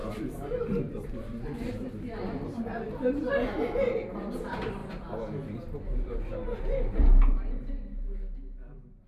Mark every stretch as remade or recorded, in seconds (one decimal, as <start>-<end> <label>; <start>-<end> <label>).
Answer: 0.0-9.1 recorded